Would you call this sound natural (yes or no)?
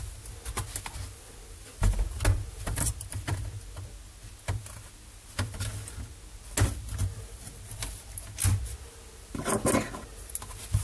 yes